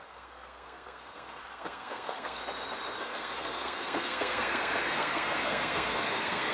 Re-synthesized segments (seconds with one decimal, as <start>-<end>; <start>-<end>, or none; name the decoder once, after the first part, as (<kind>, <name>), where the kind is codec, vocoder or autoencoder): 0.0-2.4 (codec, SNAC); 3.0-6.5